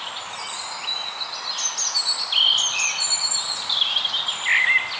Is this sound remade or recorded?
recorded